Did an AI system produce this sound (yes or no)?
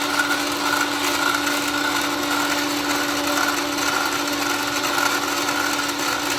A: no